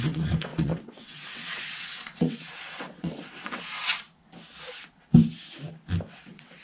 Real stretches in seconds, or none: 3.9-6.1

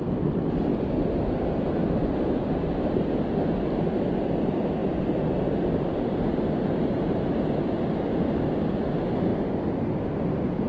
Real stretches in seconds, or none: 0.0-10.7

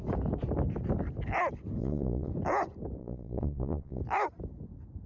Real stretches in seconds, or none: 0.0-1.8; 2.3-3.0; 4.0-5.1